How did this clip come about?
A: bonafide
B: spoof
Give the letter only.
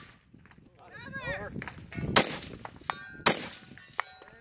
A